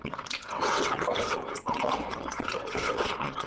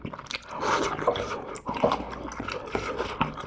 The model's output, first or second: first